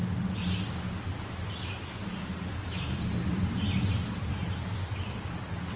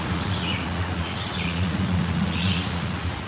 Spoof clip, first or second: second